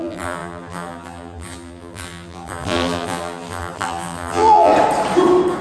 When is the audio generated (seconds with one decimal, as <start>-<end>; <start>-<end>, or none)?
0.0-4.7